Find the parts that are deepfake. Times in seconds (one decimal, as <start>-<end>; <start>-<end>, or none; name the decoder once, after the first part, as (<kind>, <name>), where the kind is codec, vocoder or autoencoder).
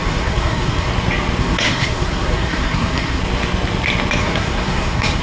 0.0-0.9 (codec, SNAC); 1.4-3.2; 4.2-5.2